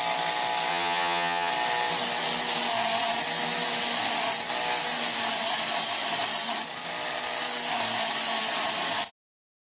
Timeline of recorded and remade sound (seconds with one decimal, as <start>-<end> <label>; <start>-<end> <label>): 0.0-0.7 recorded; 0.7-1.5 remade; 1.5-9.6 recorded